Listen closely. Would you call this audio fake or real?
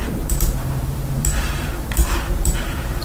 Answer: fake